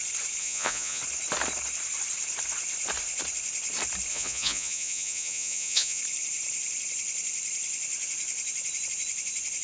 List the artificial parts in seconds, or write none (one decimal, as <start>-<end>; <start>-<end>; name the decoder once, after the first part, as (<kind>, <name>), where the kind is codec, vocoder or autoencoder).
0.4-1.0 (vocoder, Vocos); 4.1-6.0